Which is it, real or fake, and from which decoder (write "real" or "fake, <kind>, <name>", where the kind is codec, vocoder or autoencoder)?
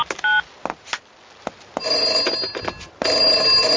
real